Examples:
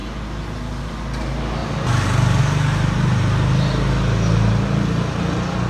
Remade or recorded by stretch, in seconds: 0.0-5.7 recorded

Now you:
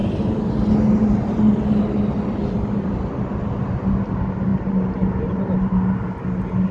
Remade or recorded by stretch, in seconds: 0.0-6.7 recorded

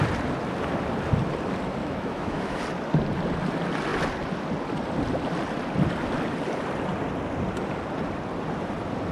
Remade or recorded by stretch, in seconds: 0.0-1.8 recorded; 1.8-2.6 remade; 2.6-9.1 recorded

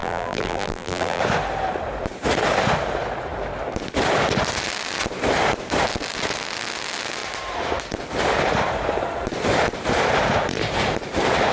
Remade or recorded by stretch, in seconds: 0.0-1.2 remade; 1.2-11.5 recorded

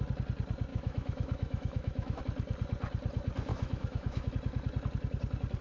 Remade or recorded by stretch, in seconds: 0.0-0.7 recorded; 0.7-2.2 remade; 2.2-3.5 recorded; 3.5-4.3 remade; 4.3-5.6 recorded